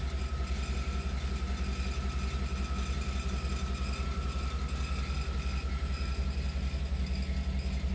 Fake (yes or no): no